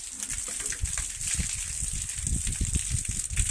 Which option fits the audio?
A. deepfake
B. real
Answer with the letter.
B